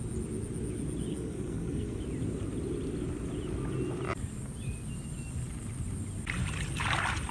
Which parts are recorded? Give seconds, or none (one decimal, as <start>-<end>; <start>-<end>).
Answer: 0.0-1.1; 2.0-7.3